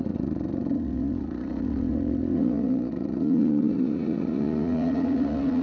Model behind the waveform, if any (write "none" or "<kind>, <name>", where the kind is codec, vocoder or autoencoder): vocoder, Vocos